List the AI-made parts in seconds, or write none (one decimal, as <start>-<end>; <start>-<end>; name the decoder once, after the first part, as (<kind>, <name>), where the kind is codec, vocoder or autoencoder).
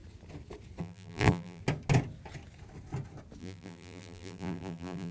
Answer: 0.8-1.6 (vocoder, BigVGAN v2); 3.4-5.1